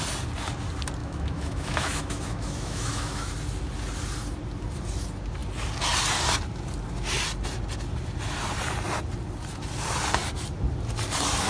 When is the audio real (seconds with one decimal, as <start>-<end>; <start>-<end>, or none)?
0.0-1.0; 3.3-11.5